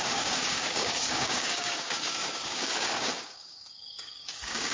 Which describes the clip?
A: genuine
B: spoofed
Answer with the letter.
B